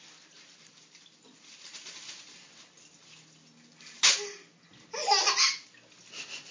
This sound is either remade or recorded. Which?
recorded